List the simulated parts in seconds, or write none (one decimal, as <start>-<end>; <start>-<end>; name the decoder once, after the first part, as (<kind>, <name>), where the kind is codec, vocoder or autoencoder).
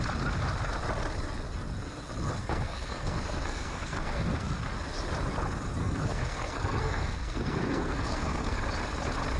2.4-4.6 (codec, SNAC); 5.8-8.6